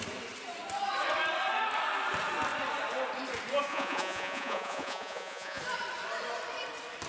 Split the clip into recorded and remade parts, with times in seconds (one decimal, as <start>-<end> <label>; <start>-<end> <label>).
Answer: 0.0-3.7 recorded; 3.7-5.6 remade; 5.6-7.1 recorded